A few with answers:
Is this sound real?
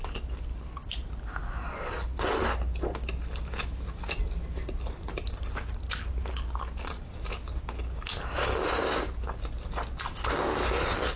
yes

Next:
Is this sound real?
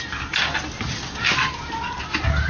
yes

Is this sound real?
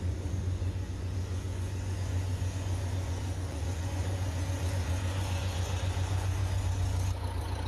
no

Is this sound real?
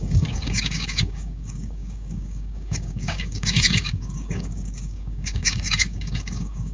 no